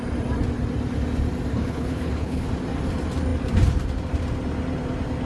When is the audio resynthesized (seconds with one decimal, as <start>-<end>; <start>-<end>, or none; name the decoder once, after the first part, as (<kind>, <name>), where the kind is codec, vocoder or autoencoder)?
1.5-2.5 (codec, HILCodec)